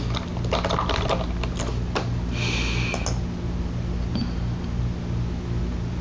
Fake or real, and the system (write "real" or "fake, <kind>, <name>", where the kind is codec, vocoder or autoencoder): real